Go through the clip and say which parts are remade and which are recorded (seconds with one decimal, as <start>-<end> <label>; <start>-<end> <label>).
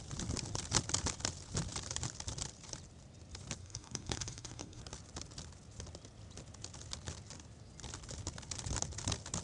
0.0-3.6 recorded; 3.6-4.8 remade; 4.8-9.4 recorded